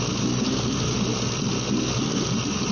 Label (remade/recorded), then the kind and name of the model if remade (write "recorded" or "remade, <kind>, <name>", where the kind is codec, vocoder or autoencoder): recorded